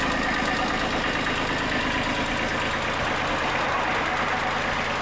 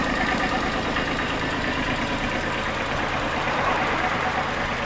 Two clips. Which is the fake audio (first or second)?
second